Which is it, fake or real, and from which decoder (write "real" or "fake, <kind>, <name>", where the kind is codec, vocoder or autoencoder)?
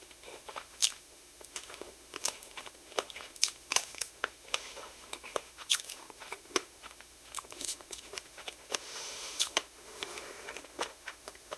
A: fake, autoencoder, DAC-VAE